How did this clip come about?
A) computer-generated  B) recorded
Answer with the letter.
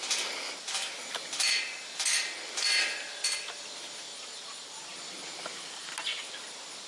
B